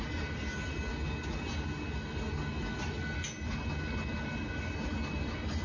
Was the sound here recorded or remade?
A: recorded